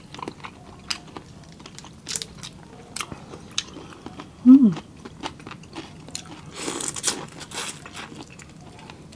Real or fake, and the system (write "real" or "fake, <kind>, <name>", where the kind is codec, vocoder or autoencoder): real